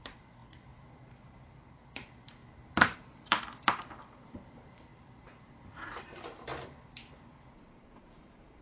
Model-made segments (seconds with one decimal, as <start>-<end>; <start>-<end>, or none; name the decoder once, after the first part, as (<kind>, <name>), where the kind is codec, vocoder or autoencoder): 0.0-8.6 (vocoder, BigVGAN v2)